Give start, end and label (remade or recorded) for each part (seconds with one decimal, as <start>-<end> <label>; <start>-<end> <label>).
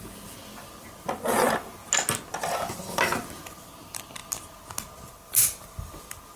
0.0-1.8 remade; 1.8-2.4 recorded; 2.4-4.2 remade; 4.2-5.1 recorded; 5.1-6.4 remade